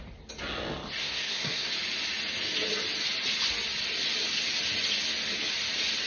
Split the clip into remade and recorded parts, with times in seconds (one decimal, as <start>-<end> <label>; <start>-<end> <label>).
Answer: 0.0-1.0 recorded; 1.0-1.7 remade; 1.7-6.1 recorded